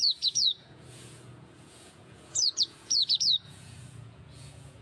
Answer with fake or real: fake